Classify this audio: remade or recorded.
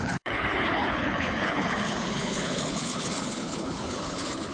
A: remade